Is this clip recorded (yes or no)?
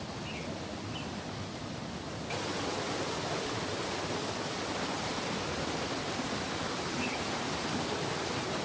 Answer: yes